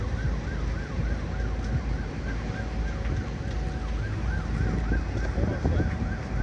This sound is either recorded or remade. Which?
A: recorded